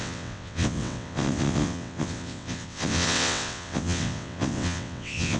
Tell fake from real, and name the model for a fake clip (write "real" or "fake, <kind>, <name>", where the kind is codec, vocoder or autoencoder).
fake, vocoder, WaveNeXt